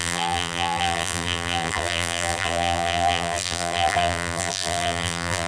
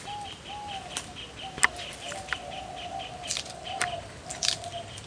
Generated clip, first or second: first